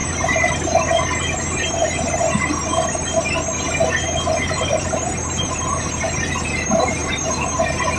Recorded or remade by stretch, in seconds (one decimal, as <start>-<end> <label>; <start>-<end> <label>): 0.0-4.5 recorded; 4.5-8.0 remade